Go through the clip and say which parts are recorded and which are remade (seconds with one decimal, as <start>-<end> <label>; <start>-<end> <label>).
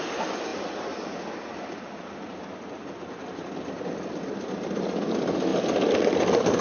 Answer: 0.0-6.6 recorded